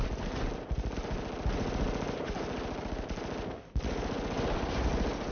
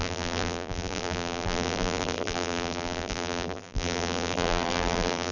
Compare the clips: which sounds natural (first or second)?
first